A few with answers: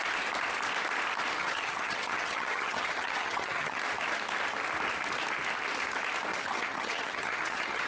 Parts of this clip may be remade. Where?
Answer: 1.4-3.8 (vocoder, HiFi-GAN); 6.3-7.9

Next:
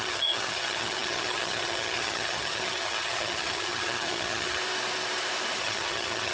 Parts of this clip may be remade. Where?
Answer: 0.0-4.6 (vocoder, HiFi-GAN); 5.6-6.3

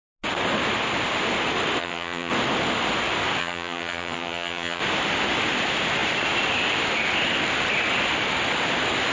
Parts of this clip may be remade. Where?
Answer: 1.8-2.3 (vocoder, HiFi-GAN); 3.4-4.8

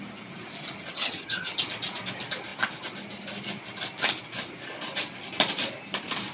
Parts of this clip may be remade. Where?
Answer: 0.9-1.6 (vocoder, HiFi-GAN)

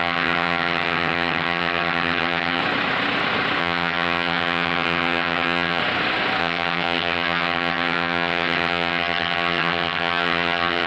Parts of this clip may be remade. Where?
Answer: 0.0-2.6 (vocoder, HiFi-GAN); 3.6-5.8; 6.4-10.9

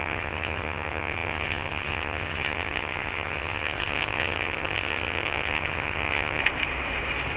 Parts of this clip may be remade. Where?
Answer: 0.0-6.4 (vocoder, HiFi-GAN)